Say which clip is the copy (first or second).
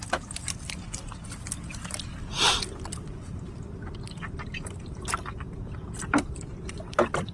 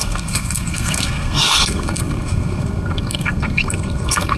second